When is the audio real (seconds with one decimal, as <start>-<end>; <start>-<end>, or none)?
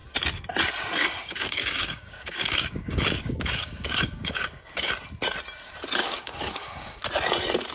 0.0-1.0; 4.9-6.0; 7.0-7.7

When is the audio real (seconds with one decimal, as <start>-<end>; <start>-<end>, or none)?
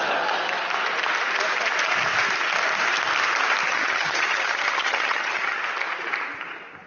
0.0-3.7; 5.6-6.9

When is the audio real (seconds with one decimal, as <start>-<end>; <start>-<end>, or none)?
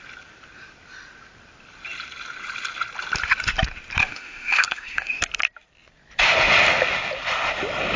0.0-4.0; 5.2-8.0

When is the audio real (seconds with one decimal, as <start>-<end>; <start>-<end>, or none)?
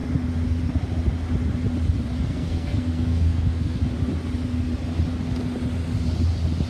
0.0-2.2; 3.8-6.7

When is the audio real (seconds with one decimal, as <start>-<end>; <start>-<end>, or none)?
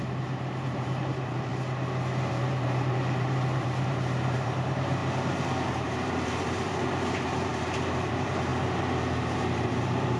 1.5-2.3; 5.0-5.7; 8.5-9.2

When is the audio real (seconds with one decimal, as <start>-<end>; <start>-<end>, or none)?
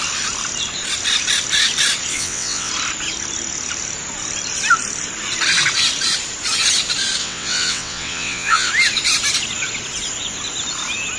0.0-2.1; 2.7-7.2; 8.7-11.2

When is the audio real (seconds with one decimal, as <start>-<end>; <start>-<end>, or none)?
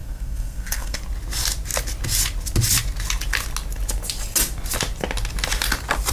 1.0-6.1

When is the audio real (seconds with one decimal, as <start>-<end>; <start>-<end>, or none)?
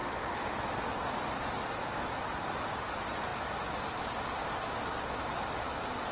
0.0-6.1